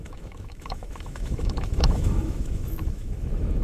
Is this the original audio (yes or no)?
no